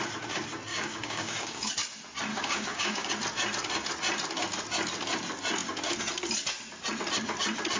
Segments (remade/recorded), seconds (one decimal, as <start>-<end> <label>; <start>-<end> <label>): 0.0-0.7 recorded; 0.7-1.7 remade; 1.7-2.3 recorded; 2.3-3.1 remade; 3.1-7.8 recorded